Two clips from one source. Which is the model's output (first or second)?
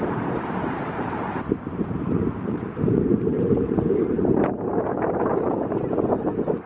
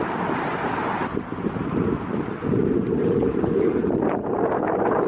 first